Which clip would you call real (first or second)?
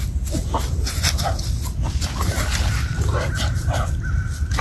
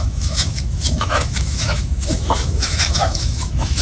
first